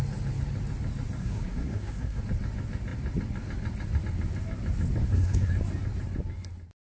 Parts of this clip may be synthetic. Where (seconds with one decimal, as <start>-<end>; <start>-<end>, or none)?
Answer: 1.2-2.2; 5.0-5.5